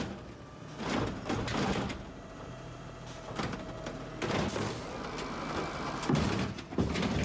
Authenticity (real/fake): real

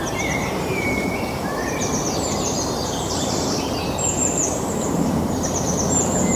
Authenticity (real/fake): fake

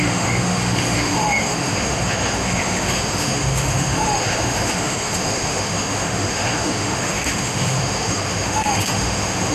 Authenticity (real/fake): fake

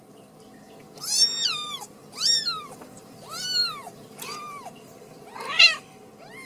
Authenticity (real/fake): fake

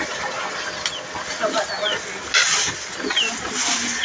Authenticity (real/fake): real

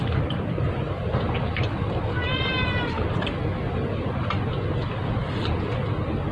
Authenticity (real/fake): real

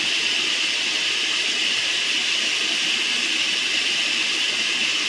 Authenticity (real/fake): real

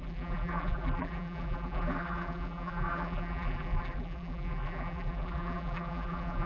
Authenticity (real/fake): fake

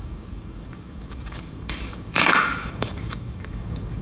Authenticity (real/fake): fake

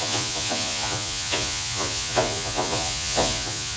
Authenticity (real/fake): fake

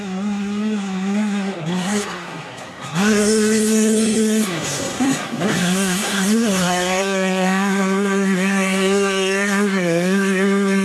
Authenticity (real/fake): fake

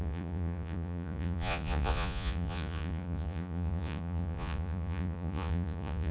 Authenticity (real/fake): fake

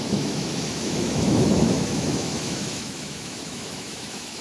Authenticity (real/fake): fake